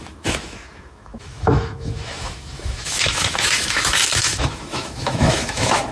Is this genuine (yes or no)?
no